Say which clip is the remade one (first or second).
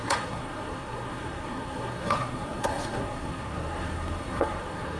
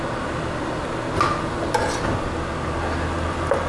first